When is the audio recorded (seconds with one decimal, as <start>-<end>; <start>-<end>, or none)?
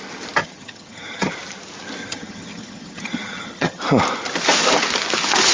0.0-0.4; 1.3-2.0; 3.8-5.5